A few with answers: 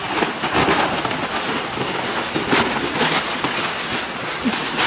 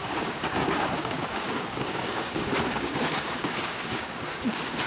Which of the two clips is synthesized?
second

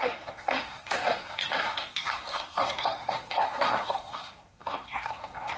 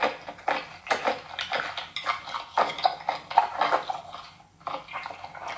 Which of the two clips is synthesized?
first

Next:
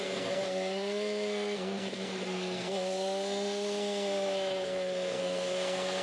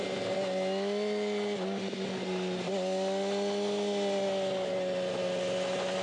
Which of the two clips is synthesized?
first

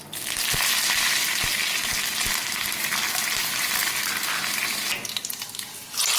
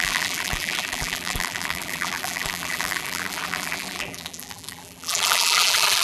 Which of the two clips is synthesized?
second